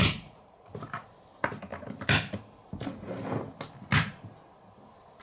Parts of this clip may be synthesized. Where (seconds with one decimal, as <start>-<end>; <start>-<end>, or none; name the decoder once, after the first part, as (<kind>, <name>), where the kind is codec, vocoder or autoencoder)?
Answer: 0.0-0.7 (vocoder, Vocos)